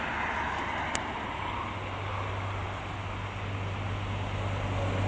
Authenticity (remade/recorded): recorded